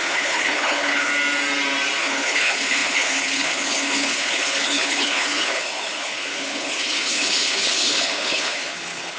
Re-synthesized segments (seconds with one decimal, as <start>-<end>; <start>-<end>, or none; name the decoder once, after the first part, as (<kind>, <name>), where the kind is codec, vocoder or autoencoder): 0.0-1.1 (codec, HILCodec); 2.0-9.2